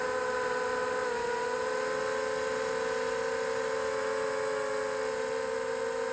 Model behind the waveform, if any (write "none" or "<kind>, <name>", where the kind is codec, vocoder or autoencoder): none